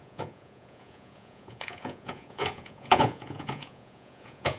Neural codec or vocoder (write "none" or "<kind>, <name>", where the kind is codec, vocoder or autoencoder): vocoder, Vocos